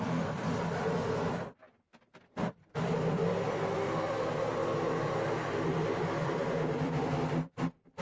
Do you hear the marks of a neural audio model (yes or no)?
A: yes